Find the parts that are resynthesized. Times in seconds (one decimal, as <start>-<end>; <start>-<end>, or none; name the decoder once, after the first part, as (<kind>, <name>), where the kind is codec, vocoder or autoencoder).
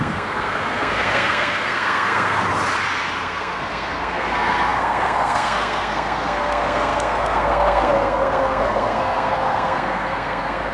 0.0-2.4 (codec, SNAC); 3.2-10.7